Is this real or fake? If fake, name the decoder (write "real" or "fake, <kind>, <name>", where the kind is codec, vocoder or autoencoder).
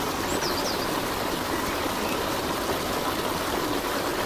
real